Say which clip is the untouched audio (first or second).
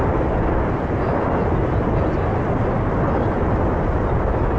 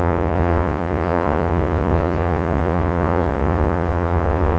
first